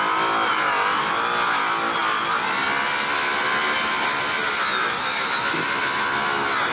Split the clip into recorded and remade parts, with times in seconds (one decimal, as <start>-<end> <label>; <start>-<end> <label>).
0.0-6.7 recorded